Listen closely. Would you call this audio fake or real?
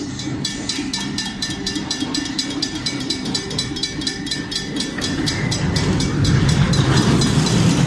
fake